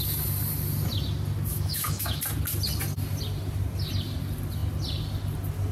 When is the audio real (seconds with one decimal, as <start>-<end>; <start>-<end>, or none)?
0.0-1.5; 2.2-5.7